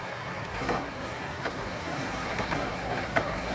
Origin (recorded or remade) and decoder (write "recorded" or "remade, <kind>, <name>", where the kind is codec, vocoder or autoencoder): remade, codec, SNAC